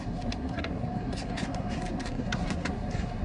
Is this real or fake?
fake